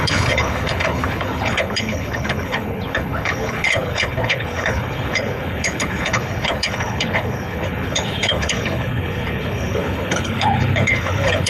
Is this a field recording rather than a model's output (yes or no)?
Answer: no